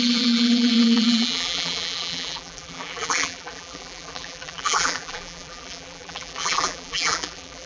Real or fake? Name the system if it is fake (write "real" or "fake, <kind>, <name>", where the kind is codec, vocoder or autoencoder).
fake, vocoder, BigVGAN v2